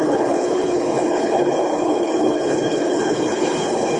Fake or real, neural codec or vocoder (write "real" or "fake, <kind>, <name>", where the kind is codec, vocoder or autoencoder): fake, codec, HILCodec